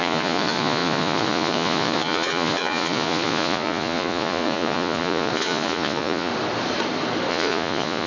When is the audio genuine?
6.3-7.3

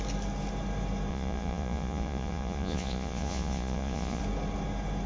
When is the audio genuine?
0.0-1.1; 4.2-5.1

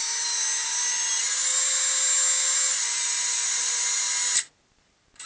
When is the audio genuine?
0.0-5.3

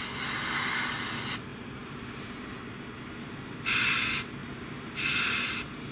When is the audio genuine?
0.0-5.9

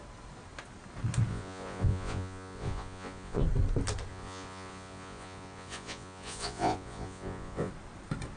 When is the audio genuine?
0.0-1.3; 3.4-4.1; 7.7-8.4

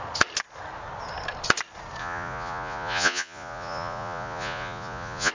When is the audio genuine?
0.0-2.0